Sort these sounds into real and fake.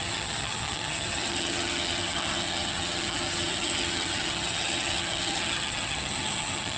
fake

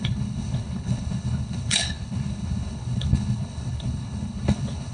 fake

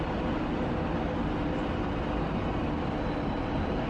real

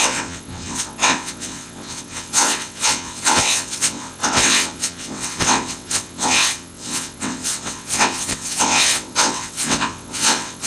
fake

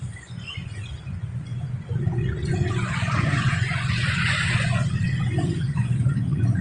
fake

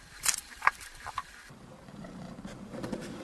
fake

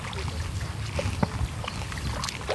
real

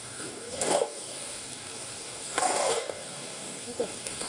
fake